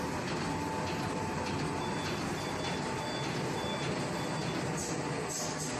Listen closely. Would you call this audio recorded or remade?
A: recorded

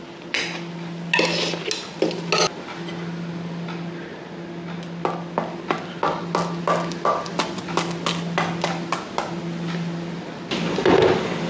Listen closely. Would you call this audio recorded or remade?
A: recorded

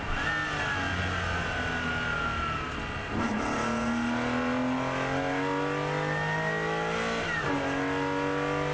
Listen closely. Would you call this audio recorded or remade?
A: recorded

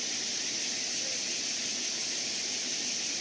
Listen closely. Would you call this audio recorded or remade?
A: recorded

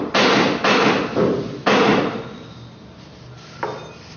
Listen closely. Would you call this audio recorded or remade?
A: recorded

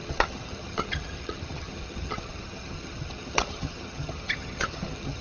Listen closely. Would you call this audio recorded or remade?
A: remade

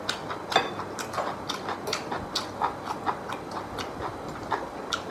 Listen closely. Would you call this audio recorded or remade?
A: recorded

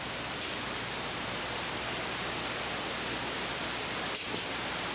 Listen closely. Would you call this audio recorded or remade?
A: recorded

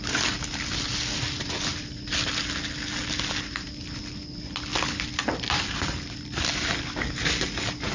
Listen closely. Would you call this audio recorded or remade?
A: recorded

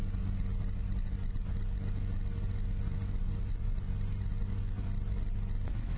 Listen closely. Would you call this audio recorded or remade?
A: recorded